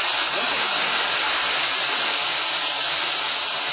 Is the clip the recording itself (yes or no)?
yes